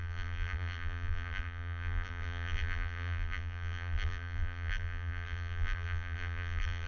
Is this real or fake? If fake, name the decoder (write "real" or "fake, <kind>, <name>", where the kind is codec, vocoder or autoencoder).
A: fake, vocoder, BigVGAN v2